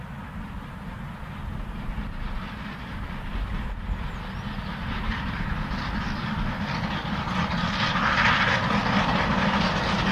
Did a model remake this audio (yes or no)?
no